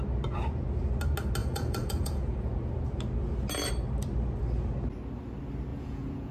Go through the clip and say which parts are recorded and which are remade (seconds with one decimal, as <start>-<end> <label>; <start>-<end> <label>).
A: 0.0-1.4 recorded; 1.4-2.6 remade; 2.6-5.7 recorded; 5.7-6.3 remade